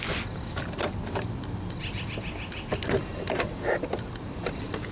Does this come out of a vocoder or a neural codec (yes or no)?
no